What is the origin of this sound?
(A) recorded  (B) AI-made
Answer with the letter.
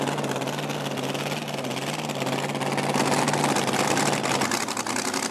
A